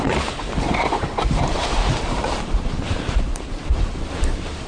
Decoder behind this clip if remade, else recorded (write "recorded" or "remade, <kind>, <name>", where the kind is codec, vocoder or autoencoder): remade, vocoder, BigVGAN v2